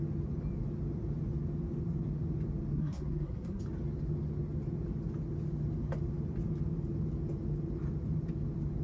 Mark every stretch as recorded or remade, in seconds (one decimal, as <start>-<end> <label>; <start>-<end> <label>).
0.0-2.7 recorded; 2.7-3.6 remade; 3.6-8.8 recorded